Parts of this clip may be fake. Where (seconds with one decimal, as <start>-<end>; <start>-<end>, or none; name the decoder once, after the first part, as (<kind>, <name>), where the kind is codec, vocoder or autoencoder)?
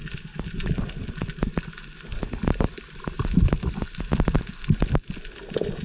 none